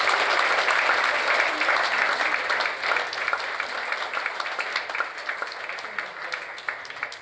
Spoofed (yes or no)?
no